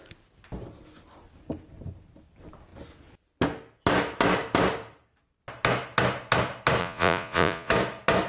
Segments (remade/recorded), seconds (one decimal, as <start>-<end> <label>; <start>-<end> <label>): 0.0-6.8 recorded; 6.8-7.7 remade; 7.7-8.3 recorded